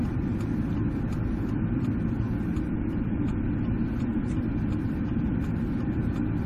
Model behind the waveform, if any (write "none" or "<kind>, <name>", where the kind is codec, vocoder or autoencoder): none